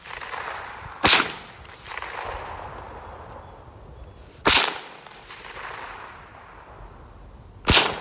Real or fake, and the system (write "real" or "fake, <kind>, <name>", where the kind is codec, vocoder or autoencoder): real